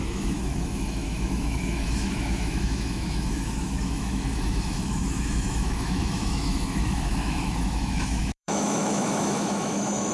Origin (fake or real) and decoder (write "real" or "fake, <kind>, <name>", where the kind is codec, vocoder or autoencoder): fake, autoencoder, DAC-VAE